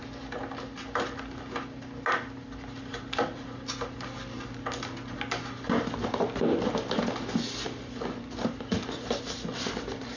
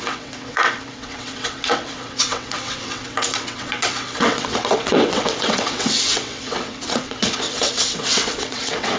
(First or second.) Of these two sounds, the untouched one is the first